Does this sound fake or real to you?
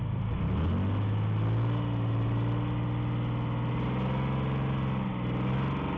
real